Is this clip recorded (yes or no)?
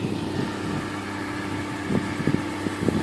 yes